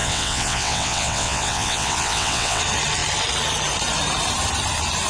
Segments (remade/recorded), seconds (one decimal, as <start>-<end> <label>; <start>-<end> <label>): 0.0-2.6 remade; 2.6-5.1 recorded